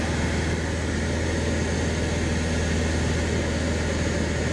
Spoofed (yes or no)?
no